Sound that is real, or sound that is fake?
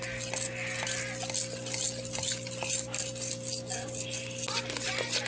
real